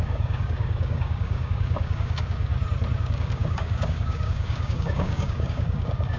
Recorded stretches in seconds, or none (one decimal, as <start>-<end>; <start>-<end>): 2.5-3.0